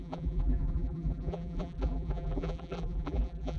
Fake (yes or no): yes